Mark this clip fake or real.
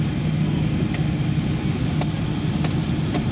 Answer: real